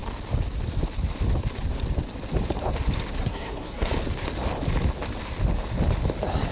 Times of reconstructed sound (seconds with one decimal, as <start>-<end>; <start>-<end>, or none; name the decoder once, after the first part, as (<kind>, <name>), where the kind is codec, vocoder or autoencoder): 3.2-3.9 (codec, SNAC)